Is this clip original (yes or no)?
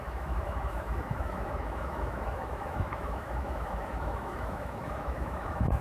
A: no